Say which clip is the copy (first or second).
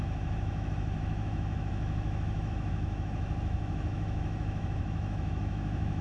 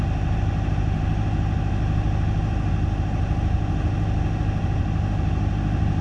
first